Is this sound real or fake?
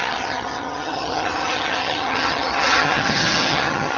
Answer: fake